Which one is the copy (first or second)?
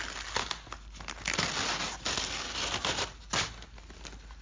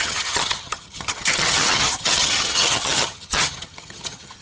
second